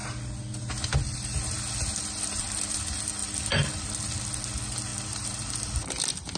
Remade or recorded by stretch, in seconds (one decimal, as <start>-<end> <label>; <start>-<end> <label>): 0.0-3.2 recorded; 3.2-3.8 remade; 3.8-4.9 recorded; 4.9-5.9 remade; 5.9-6.4 recorded